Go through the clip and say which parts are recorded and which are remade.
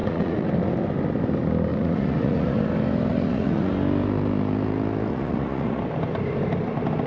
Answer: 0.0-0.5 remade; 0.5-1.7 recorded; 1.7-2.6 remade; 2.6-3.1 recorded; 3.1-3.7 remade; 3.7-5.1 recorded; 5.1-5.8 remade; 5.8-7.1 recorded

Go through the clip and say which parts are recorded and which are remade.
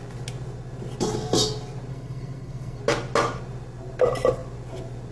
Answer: 0.0-1.9 recorded; 1.9-2.8 remade; 2.8-5.1 recorded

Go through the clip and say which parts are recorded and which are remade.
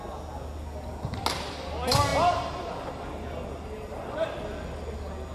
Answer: 0.0-5.3 recorded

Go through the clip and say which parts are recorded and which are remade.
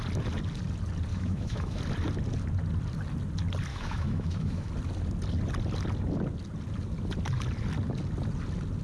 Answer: 0.0-1.1 recorded; 1.1-1.8 remade; 1.8-3.7 recorded; 3.7-4.7 remade; 4.7-8.8 recorded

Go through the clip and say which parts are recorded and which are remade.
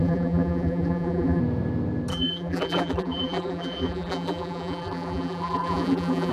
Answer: 0.0-1.4 remade; 1.4-2.1 recorded; 2.1-6.3 remade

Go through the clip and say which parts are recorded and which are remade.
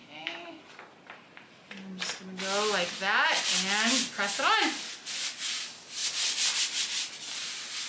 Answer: 0.0-0.6 remade; 0.6-7.9 recorded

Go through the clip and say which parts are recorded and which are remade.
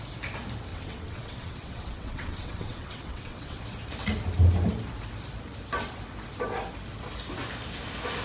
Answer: 0.0-0.7 recorded; 0.7-3.6 remade; 3.6-8.2 recorded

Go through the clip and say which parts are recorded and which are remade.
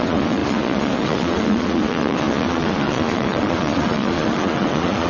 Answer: 0.0-5.1 remade